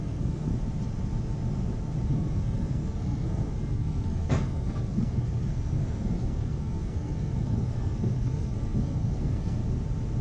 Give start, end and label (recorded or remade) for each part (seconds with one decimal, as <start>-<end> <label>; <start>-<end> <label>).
0.0-0.5 remade; 0.5-2.1 recorded; 2.1-9.6 remade; 9.6-10.2 recorded